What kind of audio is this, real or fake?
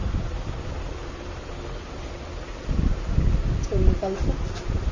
real